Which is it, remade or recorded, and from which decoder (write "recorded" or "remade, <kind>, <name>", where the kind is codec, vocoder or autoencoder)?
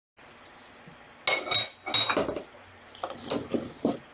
recorded